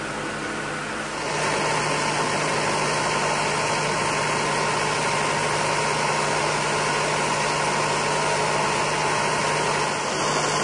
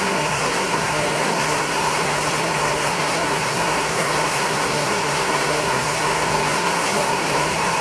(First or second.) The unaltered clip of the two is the first